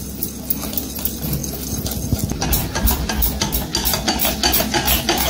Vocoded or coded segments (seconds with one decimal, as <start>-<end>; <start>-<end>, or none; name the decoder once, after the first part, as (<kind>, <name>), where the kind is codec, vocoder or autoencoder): none